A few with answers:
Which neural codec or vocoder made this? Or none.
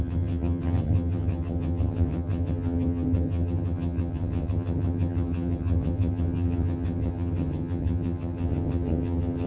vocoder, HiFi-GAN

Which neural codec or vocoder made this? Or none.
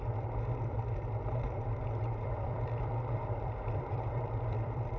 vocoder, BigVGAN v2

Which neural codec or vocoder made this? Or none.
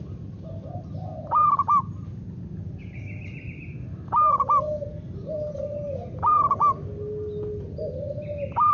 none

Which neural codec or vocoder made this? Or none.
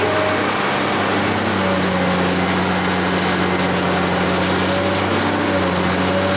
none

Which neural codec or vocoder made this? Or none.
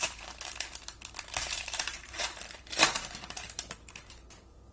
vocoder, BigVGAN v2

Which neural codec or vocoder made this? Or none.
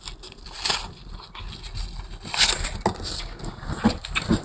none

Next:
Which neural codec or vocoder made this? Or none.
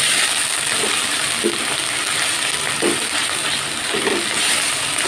none